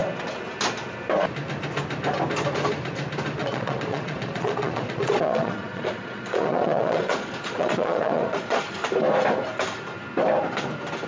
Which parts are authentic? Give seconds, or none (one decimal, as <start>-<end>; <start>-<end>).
0.0-3.4; 8.6-11.1